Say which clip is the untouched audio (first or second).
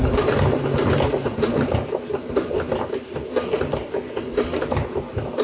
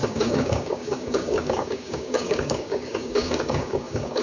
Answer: first